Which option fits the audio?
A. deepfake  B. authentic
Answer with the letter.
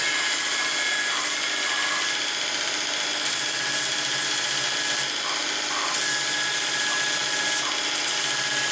B